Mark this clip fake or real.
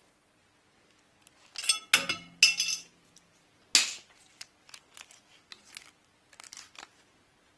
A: real